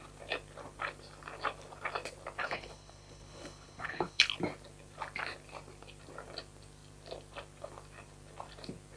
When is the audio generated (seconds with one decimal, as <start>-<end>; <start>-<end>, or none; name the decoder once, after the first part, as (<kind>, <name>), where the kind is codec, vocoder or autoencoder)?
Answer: 2.4-4.2 (codec, HILCodec)